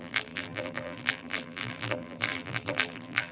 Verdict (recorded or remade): remade